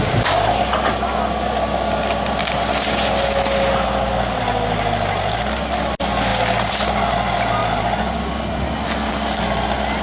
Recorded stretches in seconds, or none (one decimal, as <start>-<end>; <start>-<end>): 0.0-10.0

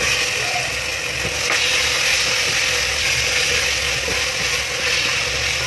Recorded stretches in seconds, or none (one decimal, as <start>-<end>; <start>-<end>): 0.0-5.7